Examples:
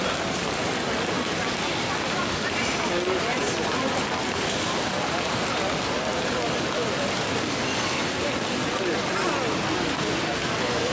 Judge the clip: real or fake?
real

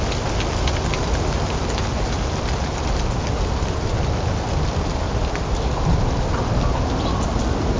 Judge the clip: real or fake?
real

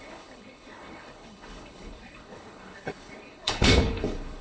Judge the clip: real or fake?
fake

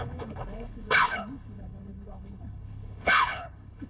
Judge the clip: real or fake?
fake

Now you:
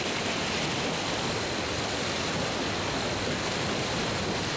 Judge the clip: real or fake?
real